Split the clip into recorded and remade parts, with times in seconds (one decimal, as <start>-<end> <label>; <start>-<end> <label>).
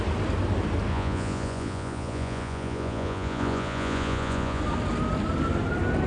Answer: 0.0-0.9 recorded; 0.9-4.6 remade; 4.6-6.1 recorded